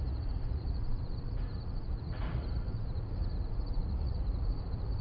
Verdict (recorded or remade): remade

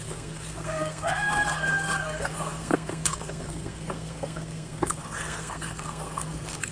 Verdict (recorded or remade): remade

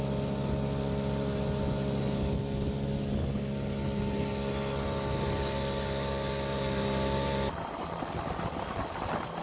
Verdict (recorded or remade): recorded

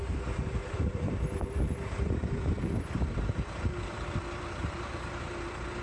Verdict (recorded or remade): remade